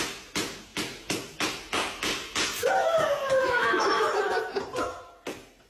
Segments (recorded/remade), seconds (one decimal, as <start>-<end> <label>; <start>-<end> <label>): 0.0-3.4 recorded; 3.4-4.1 remade; 4.1-5.7 recorded